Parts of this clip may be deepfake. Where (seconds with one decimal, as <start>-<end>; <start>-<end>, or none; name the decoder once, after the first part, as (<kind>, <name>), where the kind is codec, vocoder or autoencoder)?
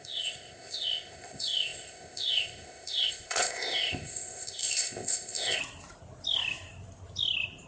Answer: 0.0-5.6 (codec, ZipCodec)